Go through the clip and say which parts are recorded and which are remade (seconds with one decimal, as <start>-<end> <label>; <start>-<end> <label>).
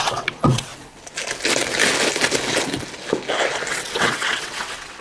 0.0-0.7 remade; 0.7-3.7 recorded; 3.7-5.0 remade